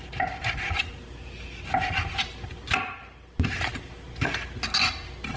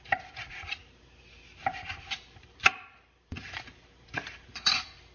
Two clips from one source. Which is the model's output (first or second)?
second